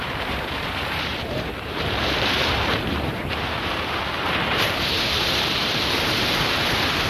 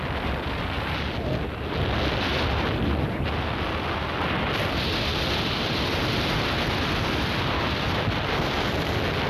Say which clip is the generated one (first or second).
first